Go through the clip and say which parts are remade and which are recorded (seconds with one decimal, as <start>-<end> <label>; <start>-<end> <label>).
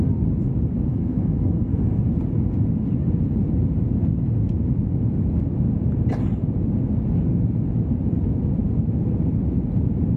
0.0-0.9 recorded; 0.9-2.0 remade; 2.0-10.2 recorded